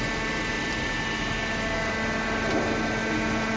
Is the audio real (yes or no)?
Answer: yes